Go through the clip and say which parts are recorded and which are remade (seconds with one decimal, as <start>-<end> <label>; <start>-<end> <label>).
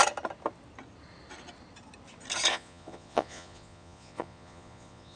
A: 0.0-2.5 recorded; 2.5-5.2 remade